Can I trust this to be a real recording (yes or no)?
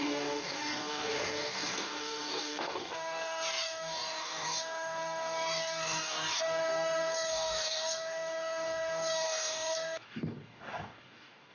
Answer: no